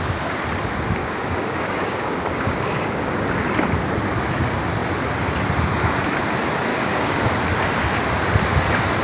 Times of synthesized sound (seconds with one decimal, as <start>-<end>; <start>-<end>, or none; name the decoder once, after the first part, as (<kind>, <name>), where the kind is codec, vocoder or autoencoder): 1.0-3.3 (codec, DAC); 6.7-7.2